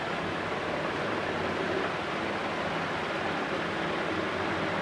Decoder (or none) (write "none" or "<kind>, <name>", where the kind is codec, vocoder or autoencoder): none